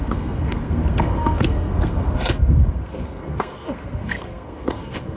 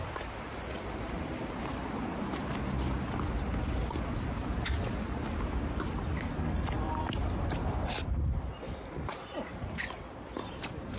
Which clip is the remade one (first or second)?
first